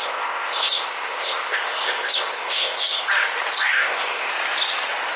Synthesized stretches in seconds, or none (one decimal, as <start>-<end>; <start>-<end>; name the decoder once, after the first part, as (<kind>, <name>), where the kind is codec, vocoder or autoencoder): 0.0-3.1 (codec, ZipCodec); 3.6-4.3